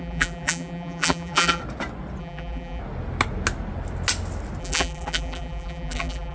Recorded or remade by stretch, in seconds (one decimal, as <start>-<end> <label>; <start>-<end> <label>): 0.0-1.6 remade; 1.6-2.2 recorded; 2.2-2.8 remade; 2.8-4.6 recorded; 4.6-6.3 remade